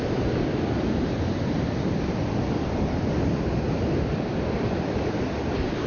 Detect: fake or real fake